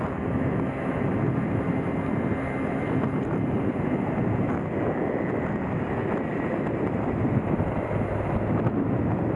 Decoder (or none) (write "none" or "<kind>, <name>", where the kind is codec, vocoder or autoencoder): none